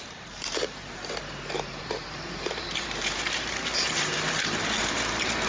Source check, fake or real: fake